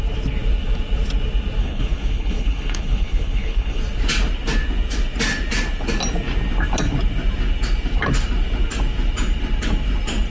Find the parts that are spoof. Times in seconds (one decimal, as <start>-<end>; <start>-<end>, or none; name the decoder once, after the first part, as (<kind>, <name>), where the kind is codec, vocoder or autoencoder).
1.6-3.8 (codec, HILCodec)